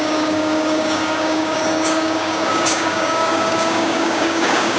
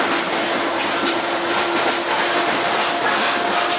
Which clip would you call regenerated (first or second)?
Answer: first